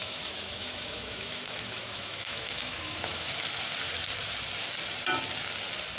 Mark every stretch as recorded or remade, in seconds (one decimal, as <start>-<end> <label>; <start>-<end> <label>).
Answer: 0.0-3.3 remade; 3.3-6.0 recorded